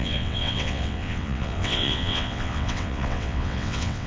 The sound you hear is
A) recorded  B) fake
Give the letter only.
B